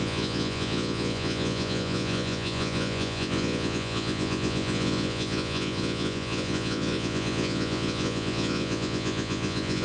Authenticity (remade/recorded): remade